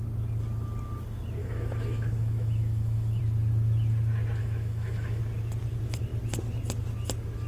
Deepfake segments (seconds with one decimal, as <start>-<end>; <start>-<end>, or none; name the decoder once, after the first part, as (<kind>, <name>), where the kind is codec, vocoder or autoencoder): 1.4-3.2 (autoencoder, DAC-VAE); 4.4-5.2